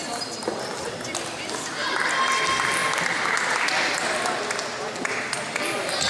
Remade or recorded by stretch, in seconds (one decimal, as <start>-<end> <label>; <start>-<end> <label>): 0.0-6.1 recorded